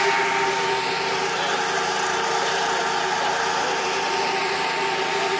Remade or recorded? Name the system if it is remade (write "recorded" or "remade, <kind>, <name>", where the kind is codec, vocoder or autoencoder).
recorded